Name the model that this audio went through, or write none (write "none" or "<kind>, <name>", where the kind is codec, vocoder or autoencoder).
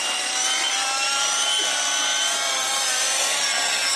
vocoder, BigVGAN v2